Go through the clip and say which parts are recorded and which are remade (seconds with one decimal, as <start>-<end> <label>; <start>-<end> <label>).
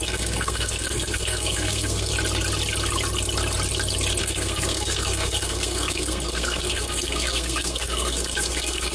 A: 0.0-2.1 remade; 2.1-4.2 recorded; 4.2-8.9 remade